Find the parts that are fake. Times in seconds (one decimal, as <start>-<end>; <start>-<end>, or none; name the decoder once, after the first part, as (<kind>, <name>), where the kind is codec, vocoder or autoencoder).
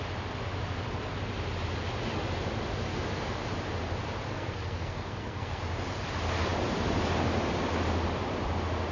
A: 4.3-5.6 (codec, SNAC)